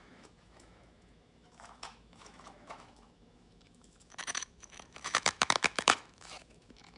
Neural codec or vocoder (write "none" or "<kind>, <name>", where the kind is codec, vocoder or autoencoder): autoencoder, DAC-VAE